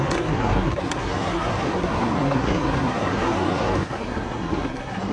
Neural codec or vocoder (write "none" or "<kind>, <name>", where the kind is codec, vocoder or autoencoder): codec, SNAC